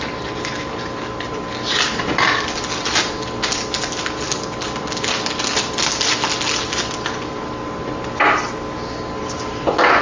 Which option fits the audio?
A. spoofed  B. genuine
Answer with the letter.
B